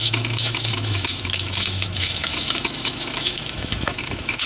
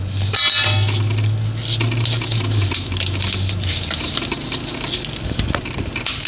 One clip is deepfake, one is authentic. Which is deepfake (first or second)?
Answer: first